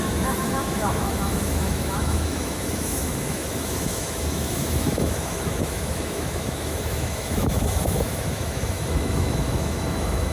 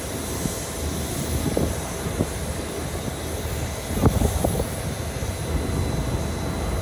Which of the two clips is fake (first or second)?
first